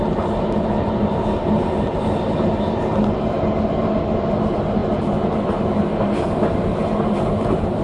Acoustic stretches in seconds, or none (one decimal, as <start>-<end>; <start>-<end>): 0.0-7.8